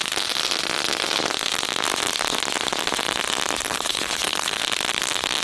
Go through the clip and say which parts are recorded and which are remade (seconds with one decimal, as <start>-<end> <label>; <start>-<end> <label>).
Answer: 0.0-3.7 recorded; 3.7-4.6 remade; 4.6-5.4 recorded